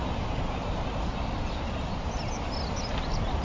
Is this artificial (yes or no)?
no